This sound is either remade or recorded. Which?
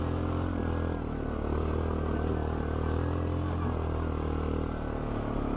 recorded